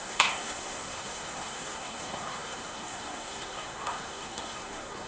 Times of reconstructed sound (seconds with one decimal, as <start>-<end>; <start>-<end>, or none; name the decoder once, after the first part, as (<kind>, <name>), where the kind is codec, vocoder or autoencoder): 0.0-5.1 (codec, SNAC)